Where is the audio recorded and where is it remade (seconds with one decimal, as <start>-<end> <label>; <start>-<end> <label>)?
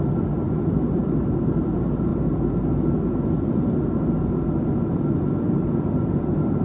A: 0.0-6.6 recorded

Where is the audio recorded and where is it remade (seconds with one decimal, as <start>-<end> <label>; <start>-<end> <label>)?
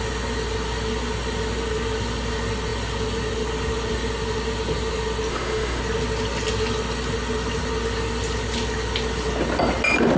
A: 0.0-5.3 recorded; 5.3-5.8 remade; 5.8-10.2 recorded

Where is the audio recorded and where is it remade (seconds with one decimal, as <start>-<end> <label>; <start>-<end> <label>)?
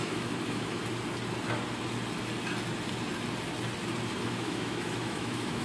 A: 0.0-0.8 remade; 0.8-4.2 recorded; 4.2-5.6 remade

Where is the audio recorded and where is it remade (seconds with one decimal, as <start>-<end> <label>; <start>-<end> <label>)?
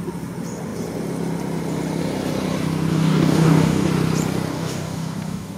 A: 0.0-2.9 recorded; 2.9-3.9 remade; 3.9-4.5 recorded; 4.5-5.6 remade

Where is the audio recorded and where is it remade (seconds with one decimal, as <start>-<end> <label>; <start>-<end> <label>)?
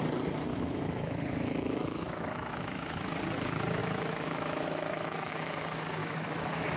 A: 0.0-0.5 recorded; 0.5-3.1 remade; 3.1-3.8 recorded; 3.8-5.3 remade; 5.3-6.0 recorded; 6.0-6.8 remade